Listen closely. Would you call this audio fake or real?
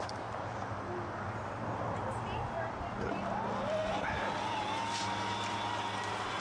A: real